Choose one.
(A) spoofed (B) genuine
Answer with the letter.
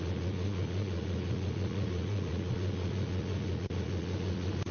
A